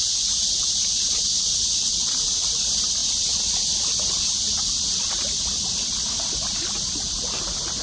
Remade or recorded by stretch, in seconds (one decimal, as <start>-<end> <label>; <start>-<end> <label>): 0.0-7.8 recorded